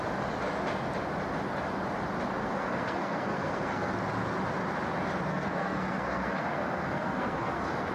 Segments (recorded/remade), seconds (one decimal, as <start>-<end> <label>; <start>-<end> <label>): 0.0-2.4 recorded; 2.4-3.9 remade; 3.9-5.3 recorded; 5.3-7.9 remade

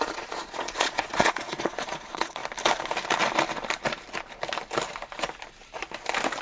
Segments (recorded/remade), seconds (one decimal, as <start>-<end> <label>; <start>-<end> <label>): 0.0-2.4 remade; 2.4-6.4 recorded

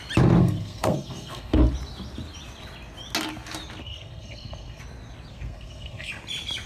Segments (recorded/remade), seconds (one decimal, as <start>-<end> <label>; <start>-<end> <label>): 0.0-0.4 recorded; 0.4-1.6 remade; 1.6-3.8 recorded; 3.8-4.8 remade; 4.8-5.3 recorded; 5.3-6.1 remade; 6.1-6.7 recorded

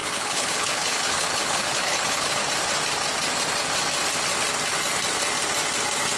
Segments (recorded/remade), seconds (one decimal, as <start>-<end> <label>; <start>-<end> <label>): 0.0-2.4 remade; 2.4-6.2 recorded